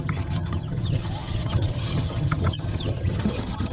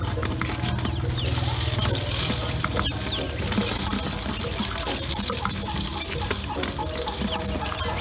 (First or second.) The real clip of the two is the second